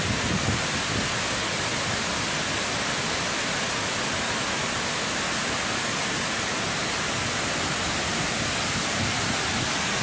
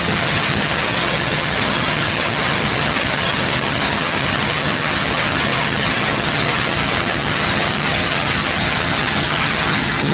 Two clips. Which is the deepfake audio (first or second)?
second